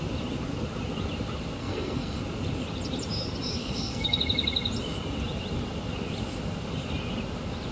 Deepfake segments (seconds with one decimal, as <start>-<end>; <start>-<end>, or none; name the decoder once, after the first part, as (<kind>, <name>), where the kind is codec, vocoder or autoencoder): 1.6-2.2 (codec, SNAC); 3.6-4.2